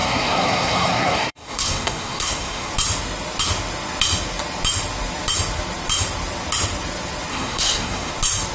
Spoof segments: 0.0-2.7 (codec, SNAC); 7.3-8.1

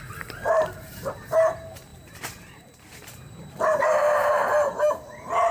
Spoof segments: 0.0-5.5 (vocoder, BigVGAN v2)

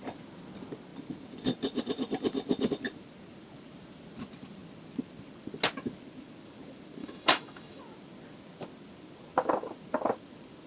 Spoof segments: 7.0-7.8 (autoencoder, DAC-VAE)

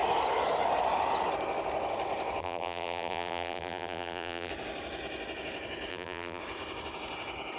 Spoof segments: 2.4-4.5 (vocoder, BigVGAN v2); 5.9-6.4

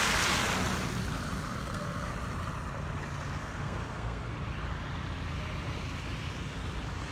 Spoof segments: 1.6-2.1 (codec, SNAC); 3.4-4.3

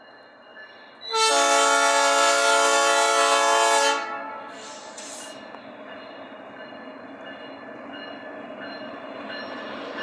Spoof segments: none

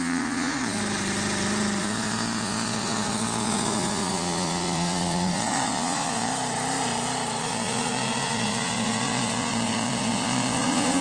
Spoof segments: 0.0-0.8 (vocoder, Vocos); 1.8-6.3; 7.4-11.0

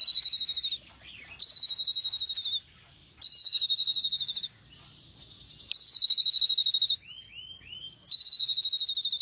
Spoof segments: 3.4-4.6 (codec, DAC); 7.8-8.6